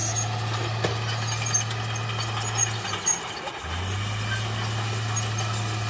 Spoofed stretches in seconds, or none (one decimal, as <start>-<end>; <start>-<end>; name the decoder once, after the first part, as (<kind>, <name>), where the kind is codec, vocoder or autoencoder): none